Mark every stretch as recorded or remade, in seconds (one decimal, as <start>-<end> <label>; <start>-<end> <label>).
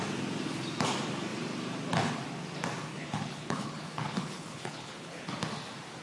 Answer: 0.0-2.9 recorded; 2.9-5.3 remade; 5.3-6.0 recorded